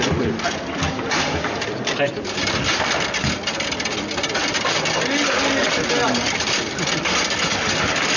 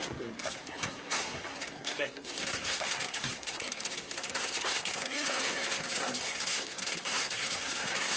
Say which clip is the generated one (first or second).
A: second